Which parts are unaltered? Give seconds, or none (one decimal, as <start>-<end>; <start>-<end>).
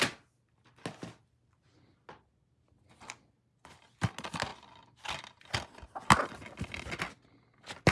0.0-7.9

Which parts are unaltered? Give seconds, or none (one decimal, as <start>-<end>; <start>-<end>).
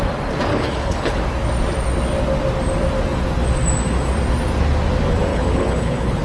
0.0-0.5; 1.2-5.3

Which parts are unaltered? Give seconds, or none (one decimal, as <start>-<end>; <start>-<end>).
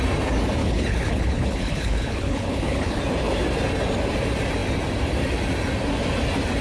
0.0-0.6; 3.0-6.6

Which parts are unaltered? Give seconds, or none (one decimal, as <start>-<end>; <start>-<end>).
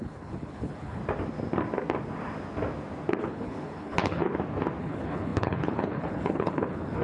1.0-3.2; 4.3-4.8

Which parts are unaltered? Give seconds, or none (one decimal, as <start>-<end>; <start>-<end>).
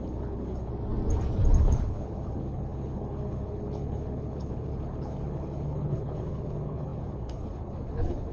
0.7-1.6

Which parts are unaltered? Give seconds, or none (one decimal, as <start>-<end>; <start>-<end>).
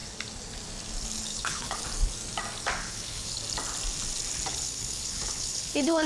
0.0-1.3; 1.8-2.8; 3.4-4.5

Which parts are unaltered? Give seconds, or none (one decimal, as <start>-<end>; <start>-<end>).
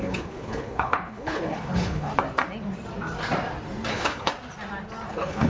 2.1-3.9; 4.3-5.1